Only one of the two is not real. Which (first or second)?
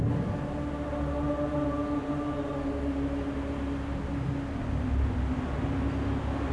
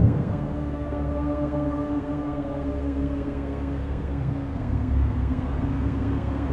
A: second